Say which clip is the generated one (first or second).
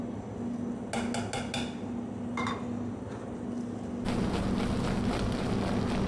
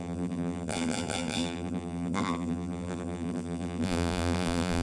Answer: second